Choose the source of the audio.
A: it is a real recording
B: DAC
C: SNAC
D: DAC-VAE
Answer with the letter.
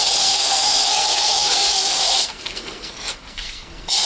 C